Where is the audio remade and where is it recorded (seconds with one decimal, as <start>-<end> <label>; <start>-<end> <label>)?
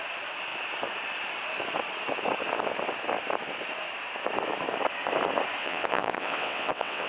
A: 0.0-5.6 recorded; 5.6-7.1 remade